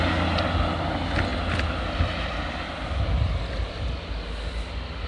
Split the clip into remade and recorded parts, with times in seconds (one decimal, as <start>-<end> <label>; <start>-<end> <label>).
0.0-5.1 recorded